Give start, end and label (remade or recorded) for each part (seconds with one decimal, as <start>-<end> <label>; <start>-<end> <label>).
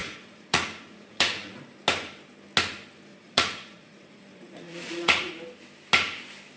0.0-1.6 remade; 1.6-3.1 recorded; 3.1-5.3 remade; 5.3-6.6 recorded